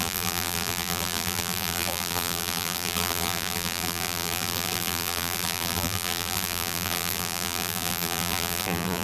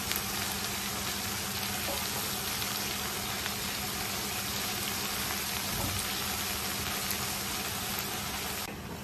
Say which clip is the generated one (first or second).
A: first